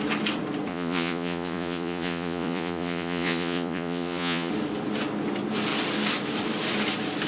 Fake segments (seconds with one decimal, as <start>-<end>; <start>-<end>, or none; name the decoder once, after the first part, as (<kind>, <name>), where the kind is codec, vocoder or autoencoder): 0.7-4.5 (vocoder, Vocos)